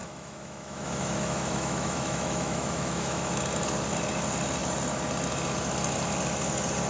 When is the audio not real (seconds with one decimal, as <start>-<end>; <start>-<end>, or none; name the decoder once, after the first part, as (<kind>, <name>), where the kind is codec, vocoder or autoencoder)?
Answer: 0.0-3.4 (autoencoder, DAC-VAE)